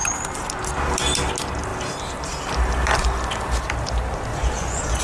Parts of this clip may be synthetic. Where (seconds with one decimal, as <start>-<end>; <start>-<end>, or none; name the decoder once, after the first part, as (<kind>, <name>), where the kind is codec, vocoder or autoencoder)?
4.3-5.0 (vocoder, Vocos)